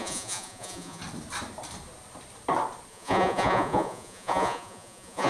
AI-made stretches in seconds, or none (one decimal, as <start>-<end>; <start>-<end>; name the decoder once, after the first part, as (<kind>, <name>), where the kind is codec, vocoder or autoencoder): 0.0-1.0 (vocoder, Vocos); 2.9-5.3